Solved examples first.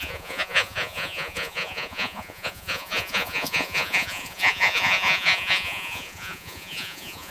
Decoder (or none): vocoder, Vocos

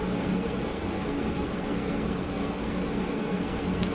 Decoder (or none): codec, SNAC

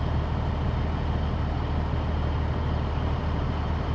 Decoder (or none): none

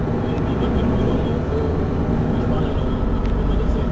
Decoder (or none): none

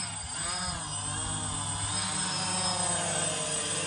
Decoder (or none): none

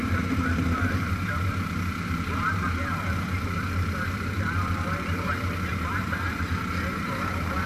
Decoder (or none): vocoder, BigVGAN v2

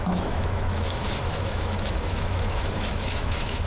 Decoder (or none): autoencoder, DAC-VAE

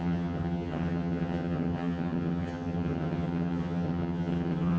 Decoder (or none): vocoder, HiFi-GAN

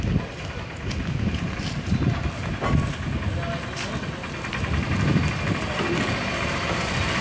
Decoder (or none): none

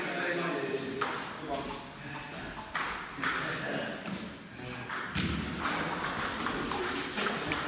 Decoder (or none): none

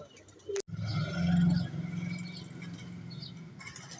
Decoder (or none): none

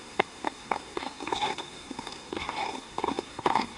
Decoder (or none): codec, SNAC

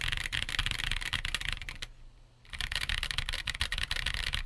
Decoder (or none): none